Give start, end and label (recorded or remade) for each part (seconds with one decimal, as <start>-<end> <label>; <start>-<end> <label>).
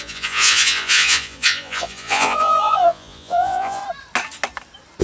0.0-3.8 remade; 3.8-5.0 recorded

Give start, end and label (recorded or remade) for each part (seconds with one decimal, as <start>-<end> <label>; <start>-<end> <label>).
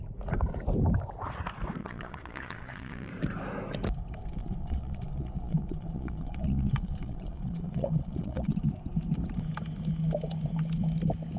0.0-1.8 recorded; 1.8-3.1 remade; 3.1-4.4 recorded; 4.4-8.6 remade; 8.6-11.4 recorded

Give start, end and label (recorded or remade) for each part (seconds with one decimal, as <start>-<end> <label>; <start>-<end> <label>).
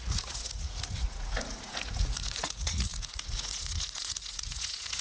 0.0-5.0 remade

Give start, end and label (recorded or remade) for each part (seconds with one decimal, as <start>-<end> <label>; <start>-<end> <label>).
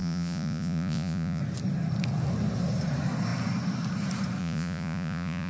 0.0-1.4 remade; 1.4-4.4 recorded; 4.4-5.5 remade